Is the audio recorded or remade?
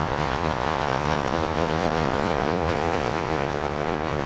remade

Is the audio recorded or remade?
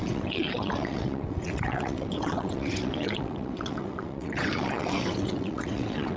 remade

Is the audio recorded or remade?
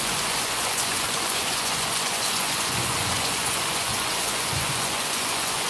remade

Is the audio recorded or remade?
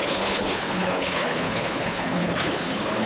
remade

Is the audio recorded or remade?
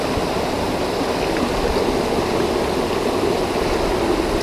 recorded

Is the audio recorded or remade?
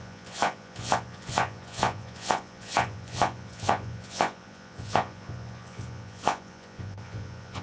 remade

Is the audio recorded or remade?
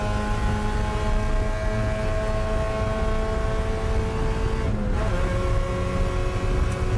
recorded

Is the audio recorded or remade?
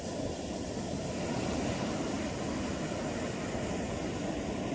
recorded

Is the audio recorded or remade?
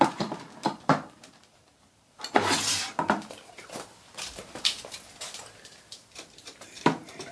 remade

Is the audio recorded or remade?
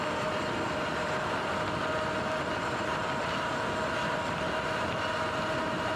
recorded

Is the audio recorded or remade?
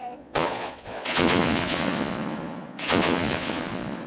remade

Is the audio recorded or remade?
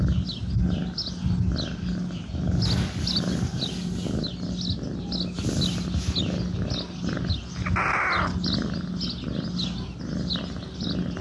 recorded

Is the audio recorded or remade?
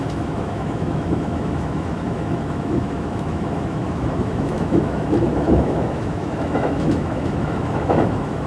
remade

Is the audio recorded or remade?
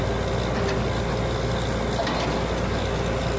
recorded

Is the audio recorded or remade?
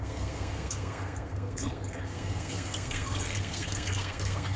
remade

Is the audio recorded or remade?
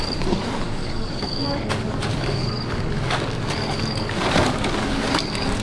remade